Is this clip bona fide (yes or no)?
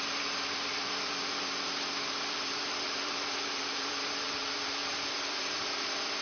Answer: no